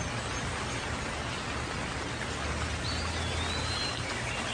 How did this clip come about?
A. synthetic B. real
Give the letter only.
B